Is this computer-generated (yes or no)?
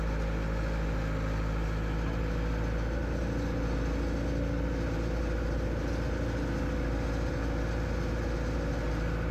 no